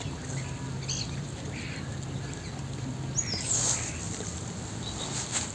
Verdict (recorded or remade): recorded